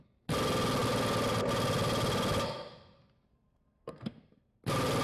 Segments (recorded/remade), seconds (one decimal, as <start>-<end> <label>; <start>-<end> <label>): 0.0-3.3 recorded; 3.3-4.3 remade; 4.3-5.0 recorded